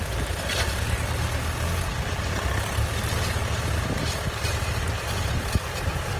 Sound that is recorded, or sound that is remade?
recorded